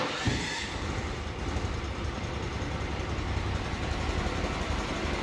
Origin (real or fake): fake